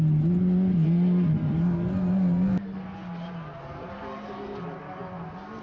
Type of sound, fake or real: real